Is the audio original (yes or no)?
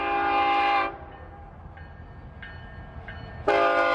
yes